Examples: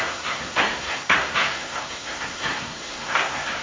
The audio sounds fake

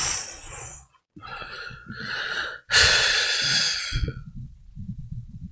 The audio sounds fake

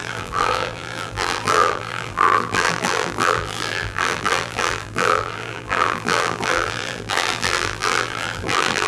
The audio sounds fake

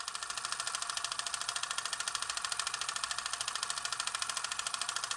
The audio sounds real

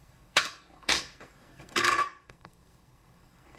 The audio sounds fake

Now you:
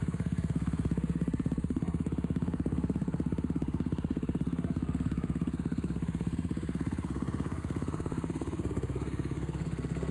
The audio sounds fake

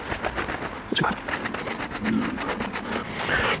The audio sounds real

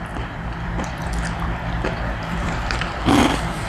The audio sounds fake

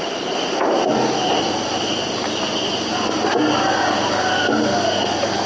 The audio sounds real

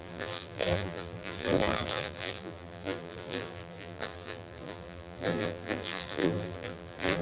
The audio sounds fake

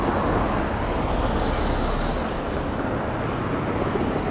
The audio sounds real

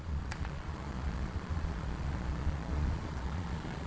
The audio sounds fake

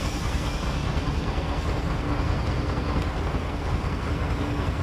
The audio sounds fake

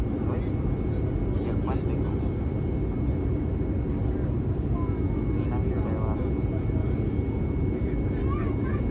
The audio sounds real